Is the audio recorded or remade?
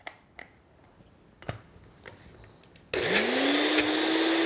recorded